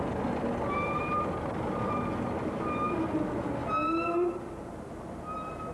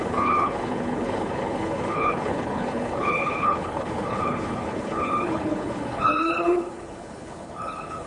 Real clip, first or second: first